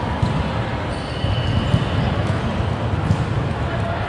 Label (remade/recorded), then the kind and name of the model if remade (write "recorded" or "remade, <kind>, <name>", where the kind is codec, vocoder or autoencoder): recorded